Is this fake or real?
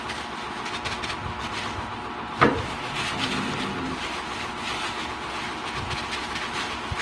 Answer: real